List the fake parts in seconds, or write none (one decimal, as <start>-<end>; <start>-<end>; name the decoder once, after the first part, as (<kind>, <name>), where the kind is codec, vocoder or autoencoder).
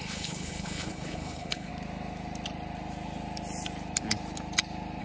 0.0-1.7 (codec, HILCodec)